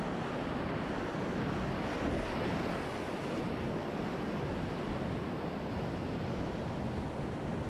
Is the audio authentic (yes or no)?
yes